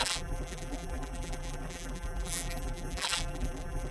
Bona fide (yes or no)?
no